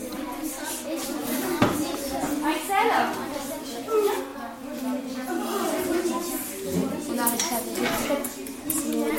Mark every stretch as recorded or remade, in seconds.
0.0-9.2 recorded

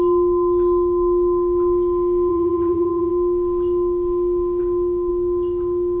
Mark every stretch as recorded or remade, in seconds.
0.0-2.3 recorded; 2.3-3.1 remade; 3.1-6.0 recorded